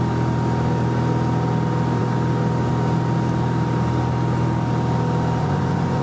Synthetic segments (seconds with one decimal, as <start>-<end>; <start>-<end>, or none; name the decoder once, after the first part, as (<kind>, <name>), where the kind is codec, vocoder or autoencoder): 5.4-6.0 (vocoder, Vocos)